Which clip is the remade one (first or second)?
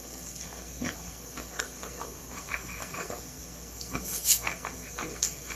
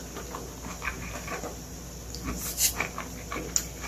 first